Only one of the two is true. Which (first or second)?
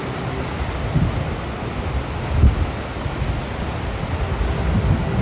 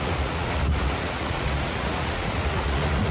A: first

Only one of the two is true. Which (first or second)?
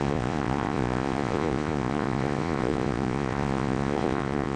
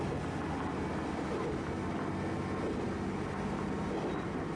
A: second